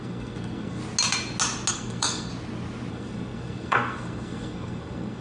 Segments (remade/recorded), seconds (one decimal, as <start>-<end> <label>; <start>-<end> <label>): 0.0-0.8 remade; 0.8-1.7 recorded; 1.7-2.3 remade; 2.3-2.9 recorded; 2.9-5.2 remade

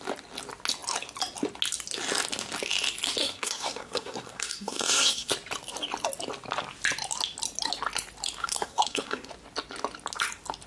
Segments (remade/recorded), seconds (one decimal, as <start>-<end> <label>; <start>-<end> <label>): 0.0-3.2 recorded; 3.2-5.3 remade; 5.3-8.4 recorded; 8.4-9.3 remade; 9.3-10.7 recorded

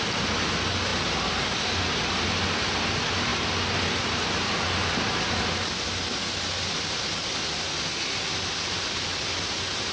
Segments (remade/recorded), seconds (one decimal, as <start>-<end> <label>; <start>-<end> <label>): 0.0-9.9 recorded

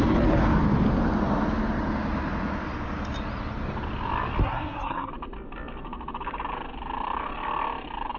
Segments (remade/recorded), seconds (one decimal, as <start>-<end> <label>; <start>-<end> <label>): 0.0-4.4 recorded; 4.4-5.1 remade; 5.1-8.2 recorded

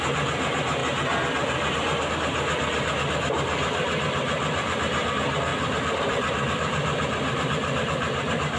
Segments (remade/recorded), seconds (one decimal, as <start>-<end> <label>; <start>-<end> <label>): 0.0-0.8 recorded; 0.8-2.1 remade; 2.1-5.5 recorded; 5.5-8.6 remade